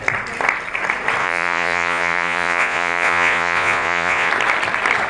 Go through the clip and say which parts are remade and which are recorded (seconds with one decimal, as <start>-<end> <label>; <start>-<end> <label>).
0.0-1.2 recorded; 1.2-4.3 remade; 4.3-5.1 recorded

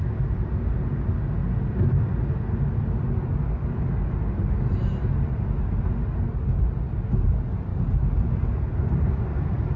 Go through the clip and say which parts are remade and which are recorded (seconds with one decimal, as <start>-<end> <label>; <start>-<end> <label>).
0.0-9.8 recorded

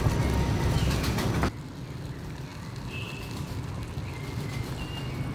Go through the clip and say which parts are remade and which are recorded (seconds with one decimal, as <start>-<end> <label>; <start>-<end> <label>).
0.0-5.3 recorded

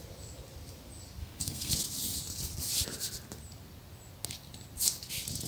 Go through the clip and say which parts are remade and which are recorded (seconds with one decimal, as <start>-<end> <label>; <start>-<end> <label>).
0.0-1.2 recorded; 1.2-1.7 remade; 1.7-5.5 recorded